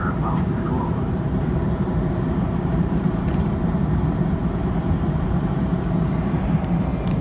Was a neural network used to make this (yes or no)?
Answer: yes